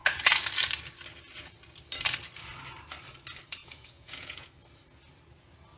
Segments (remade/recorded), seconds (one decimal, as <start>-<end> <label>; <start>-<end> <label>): 0.0-3.6 recorded; 3.6-4.5 remade; 4.5-5.8 recorded